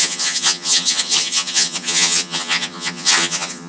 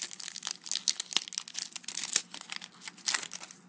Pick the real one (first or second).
second